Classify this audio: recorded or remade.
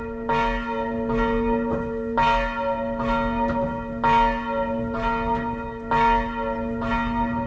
recorded